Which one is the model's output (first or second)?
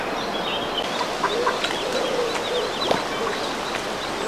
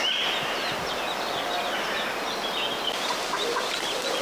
second